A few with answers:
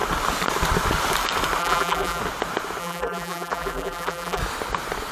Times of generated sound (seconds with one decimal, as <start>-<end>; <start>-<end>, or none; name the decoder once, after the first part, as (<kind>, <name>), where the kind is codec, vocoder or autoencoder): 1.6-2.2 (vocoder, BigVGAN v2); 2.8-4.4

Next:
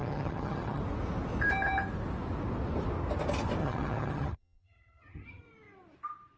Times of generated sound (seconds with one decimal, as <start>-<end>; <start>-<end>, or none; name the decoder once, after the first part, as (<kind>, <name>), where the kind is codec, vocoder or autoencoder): 0.0-0.8 (vocoder, HiFi-GAN); 3.6-5.4

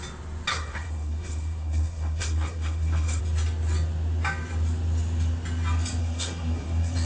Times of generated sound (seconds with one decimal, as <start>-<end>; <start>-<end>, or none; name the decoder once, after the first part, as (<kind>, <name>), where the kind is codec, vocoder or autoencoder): 0.5-3.2 (codec, SNAC); 6.0-7.1